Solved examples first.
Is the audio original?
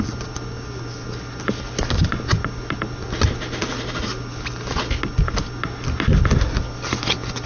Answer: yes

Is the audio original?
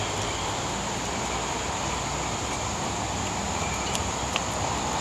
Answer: yes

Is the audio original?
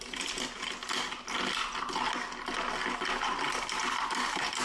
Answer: yes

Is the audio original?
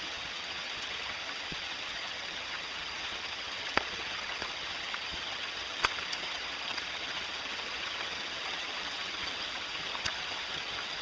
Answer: no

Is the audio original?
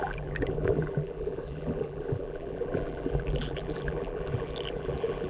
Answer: no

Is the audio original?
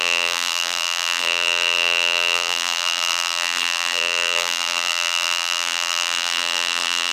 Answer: no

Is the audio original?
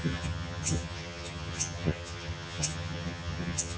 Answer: no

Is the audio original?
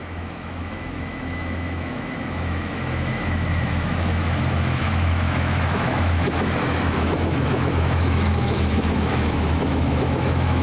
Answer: no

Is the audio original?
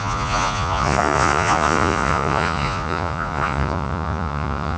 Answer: no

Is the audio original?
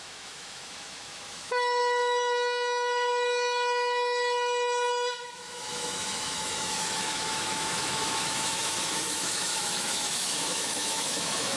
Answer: no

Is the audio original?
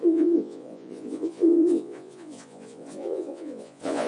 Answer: no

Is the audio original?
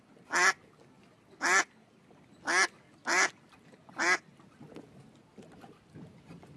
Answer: yes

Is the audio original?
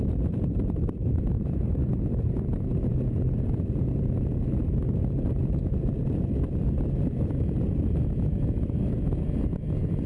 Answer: no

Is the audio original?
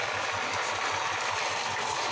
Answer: yes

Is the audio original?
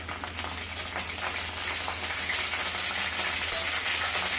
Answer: yes